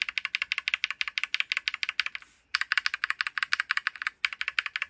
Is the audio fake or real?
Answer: real